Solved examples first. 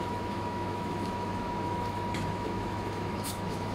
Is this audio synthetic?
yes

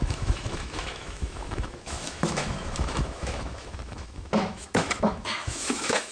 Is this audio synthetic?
yes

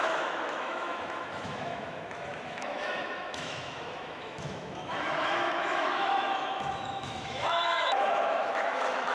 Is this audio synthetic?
yes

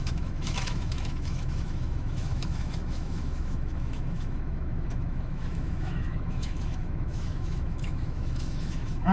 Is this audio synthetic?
yes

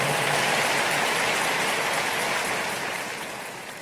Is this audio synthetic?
no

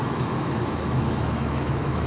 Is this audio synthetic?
yes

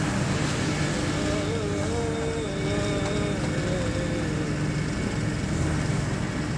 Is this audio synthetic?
no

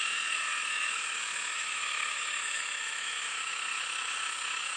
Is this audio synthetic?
yes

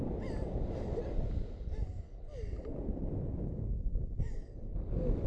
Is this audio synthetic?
no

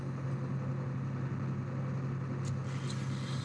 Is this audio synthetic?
no